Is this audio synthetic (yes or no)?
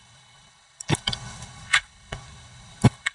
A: yes